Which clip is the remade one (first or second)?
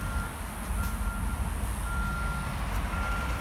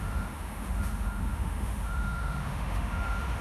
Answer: second